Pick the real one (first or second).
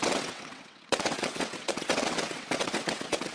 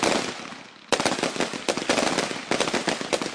second